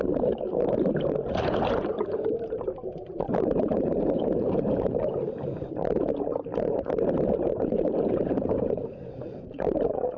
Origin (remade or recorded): remade